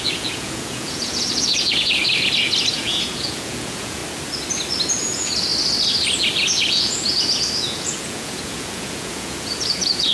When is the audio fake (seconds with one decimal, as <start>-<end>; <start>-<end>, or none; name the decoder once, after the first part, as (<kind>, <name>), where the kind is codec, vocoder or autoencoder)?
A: 0.0-2.0 (vocoder, Vocos); 2.7-4.0; 5.0-5.5; 6.7-10.1

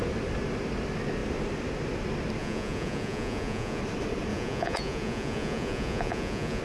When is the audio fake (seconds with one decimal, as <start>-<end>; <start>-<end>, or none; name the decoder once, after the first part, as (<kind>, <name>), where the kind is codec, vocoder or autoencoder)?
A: 2.4-3.8 (vocoder, Vocos); 4.3-6.6

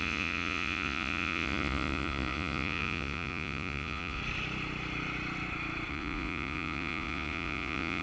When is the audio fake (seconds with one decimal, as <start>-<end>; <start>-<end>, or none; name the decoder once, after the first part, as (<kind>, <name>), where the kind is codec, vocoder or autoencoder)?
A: 0.0-4.2 (vocoder, Vocos); 5.9-8.0

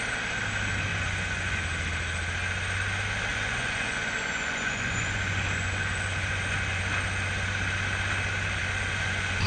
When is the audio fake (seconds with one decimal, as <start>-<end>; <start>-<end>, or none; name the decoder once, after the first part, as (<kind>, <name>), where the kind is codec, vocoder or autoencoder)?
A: 0.9-1.6 (vocoder, Vocos); 3.3-6.8; 8.6-9.5

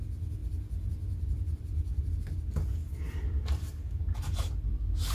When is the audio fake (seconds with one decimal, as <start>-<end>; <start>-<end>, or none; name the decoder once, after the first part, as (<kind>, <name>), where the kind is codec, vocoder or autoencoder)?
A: none

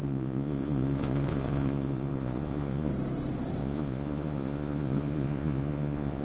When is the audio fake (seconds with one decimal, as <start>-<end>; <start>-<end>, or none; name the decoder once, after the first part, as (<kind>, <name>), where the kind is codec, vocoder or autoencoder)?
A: 0.0-2.9 (vocoder, Vocos); 3.6-6.2

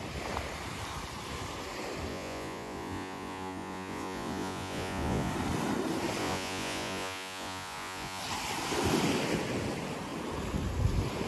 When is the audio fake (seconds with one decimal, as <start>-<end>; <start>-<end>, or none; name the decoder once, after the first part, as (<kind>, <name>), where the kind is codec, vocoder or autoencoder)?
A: 2.1-5.3 (vocoder, Vocos); 6.2-8.2

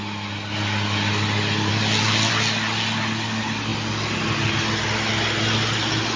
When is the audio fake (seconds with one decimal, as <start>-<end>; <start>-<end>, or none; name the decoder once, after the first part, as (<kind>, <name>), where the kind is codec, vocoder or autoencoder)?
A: none